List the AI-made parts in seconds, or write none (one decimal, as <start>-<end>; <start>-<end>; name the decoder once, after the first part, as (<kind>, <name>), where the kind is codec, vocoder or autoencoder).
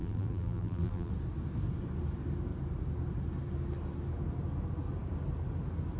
0.0-1.1 (vocoder, BigVGAN v2)